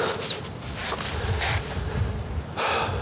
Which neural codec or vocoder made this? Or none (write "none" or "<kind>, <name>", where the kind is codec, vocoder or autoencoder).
none